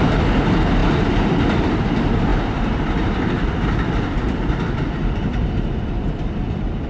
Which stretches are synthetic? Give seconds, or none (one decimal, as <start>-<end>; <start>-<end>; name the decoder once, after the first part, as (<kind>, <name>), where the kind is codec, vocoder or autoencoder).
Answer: 0.0-6.9 (vocoder, BigVGAN v2)